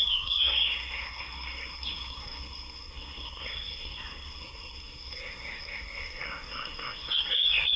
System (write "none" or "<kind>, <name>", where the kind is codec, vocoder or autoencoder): codec, SNAC